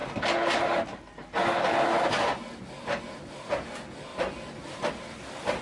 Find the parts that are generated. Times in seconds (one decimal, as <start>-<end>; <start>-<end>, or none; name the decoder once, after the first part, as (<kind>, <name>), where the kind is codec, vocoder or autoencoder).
none